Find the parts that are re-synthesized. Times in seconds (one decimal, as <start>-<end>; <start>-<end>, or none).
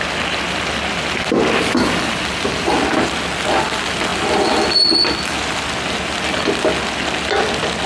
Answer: none